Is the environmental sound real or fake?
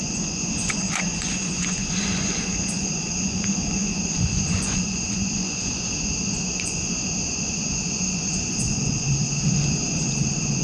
fake